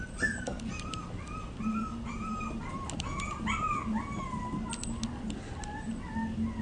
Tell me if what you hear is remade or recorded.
recorded